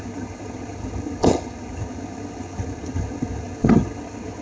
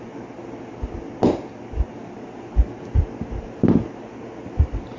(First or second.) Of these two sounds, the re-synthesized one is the first